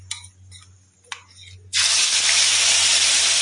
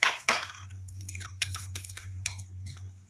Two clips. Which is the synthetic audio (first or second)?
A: second